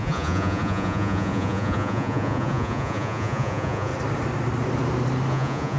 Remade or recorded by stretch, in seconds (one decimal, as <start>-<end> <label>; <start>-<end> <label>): 0.0-3.9 remade; 3.9-5.3 recorded; 5.3-5.8 remade